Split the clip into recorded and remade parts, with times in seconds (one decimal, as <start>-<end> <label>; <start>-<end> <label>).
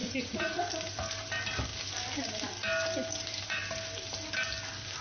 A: 0.0-0.6 remade; 0.6-5.0 recorded